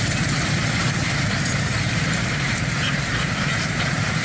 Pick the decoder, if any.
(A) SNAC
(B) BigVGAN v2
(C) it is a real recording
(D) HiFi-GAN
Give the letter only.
B